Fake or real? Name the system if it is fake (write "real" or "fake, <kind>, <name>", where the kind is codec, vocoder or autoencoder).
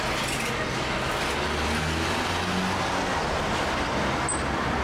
real